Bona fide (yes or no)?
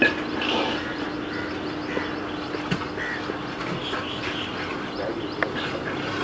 yes